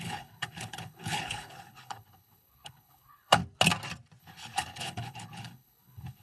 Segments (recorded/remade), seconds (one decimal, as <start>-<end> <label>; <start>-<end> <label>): 0.0-3.4 remade; 3.4-4.2 recorded; 4.2-6.2 remade